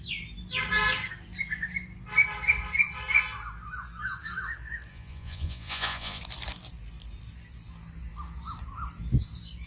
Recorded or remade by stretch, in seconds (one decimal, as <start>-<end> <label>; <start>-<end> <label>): 0.0-4.9 recorded; 4.9-6.2 remade; 6.2-9.7 recorded